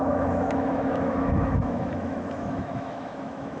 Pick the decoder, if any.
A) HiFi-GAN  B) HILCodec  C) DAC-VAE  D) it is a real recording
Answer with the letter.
C